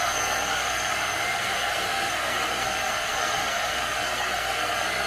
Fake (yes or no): yes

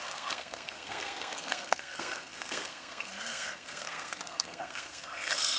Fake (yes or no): yes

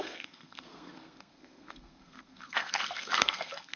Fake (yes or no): yes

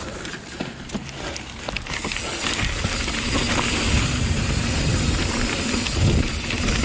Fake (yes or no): no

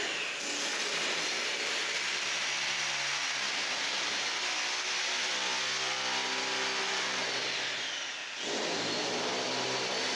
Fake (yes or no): no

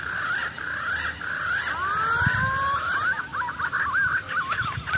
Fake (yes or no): no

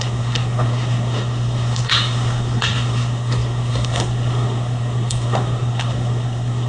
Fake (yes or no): yes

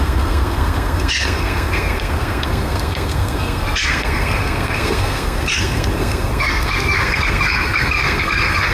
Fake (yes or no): yes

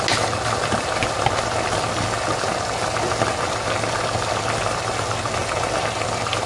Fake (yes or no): no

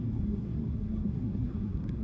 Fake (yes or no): yes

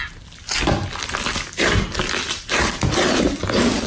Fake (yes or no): no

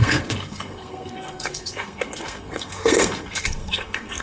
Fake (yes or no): yes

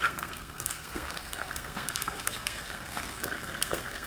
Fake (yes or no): yes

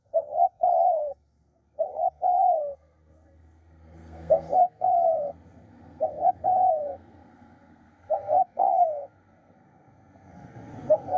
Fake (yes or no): yes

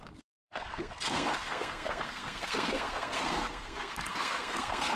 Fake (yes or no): yes